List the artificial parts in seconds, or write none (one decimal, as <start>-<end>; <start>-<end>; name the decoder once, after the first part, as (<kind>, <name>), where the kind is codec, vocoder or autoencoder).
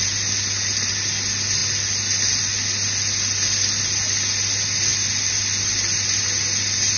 none